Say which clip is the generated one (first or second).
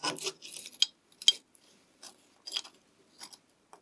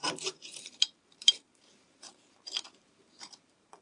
second